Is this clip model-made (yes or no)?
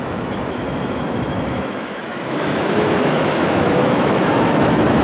yes